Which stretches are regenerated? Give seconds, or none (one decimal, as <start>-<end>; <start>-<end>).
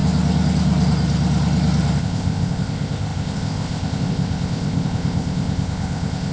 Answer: 2.0-6.3